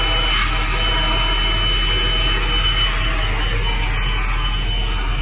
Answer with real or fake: real